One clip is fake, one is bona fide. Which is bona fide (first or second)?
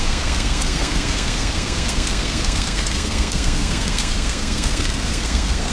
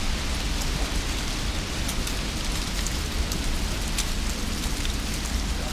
second